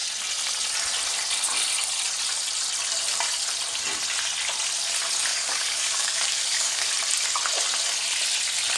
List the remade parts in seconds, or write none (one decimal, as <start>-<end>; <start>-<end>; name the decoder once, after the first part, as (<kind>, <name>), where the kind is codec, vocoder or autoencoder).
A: 5.3-6.9 (codec, DAC)